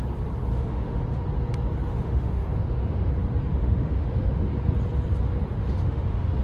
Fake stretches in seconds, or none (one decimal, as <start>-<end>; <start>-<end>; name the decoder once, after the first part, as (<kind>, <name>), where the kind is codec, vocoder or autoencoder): 0.5-1.0 (autoencoder, DAC-VAE); 1.9-3.1; 3.5-4.5; 5.6-6.4

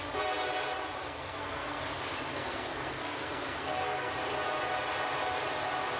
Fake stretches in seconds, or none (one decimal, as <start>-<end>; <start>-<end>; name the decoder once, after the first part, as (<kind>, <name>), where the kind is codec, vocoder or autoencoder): 1.0-1.8 (codec, SNAC); 2.3-4.1

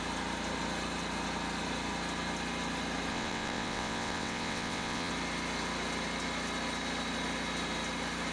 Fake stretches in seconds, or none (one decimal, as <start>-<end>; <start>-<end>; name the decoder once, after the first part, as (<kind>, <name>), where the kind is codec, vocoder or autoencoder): 3.1-5.1 (vocoder, WaveNeXt)

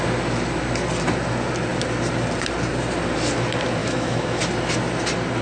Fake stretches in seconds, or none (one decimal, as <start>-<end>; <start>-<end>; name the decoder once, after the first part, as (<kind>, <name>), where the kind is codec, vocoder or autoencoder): 3.8-4.4 (autoencoder, DAC-VAE)